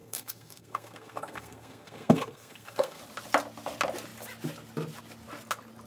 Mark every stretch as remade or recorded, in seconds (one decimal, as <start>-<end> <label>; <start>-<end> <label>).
0.0-3.0 remade; 3.0-5.9 recorded